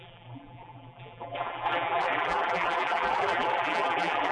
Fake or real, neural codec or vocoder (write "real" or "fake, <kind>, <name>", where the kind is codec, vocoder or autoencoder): fake, vocoder, BigVGAN v2